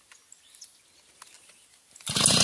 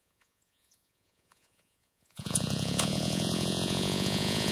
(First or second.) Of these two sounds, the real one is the first